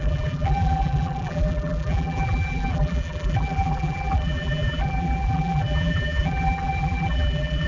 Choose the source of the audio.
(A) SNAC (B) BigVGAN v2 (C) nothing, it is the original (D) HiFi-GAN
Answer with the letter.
B